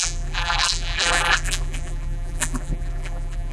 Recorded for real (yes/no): no